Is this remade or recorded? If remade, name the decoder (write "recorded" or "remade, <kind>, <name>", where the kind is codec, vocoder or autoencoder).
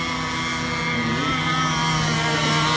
recorded